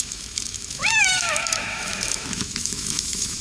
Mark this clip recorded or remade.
remade